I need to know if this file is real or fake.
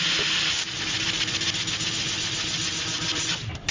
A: real